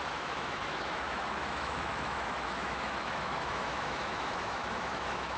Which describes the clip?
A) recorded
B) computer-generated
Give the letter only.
B